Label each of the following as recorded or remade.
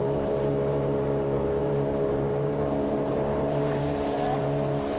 remade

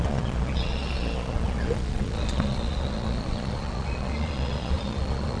remade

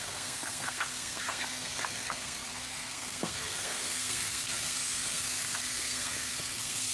remade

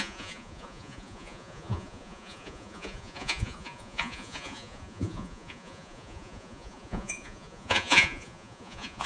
remade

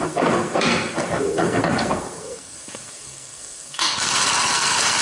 remade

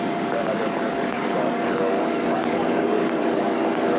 remade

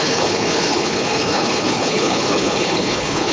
remade